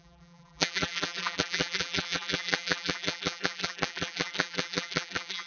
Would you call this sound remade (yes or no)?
yes